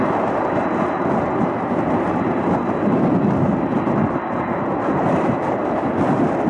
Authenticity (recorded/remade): recorded